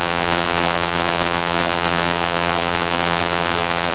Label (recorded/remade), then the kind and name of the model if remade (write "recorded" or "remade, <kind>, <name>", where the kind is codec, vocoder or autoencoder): remade, vocoder, BigVGAN v2